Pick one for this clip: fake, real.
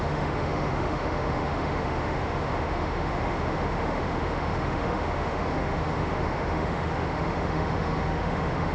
fake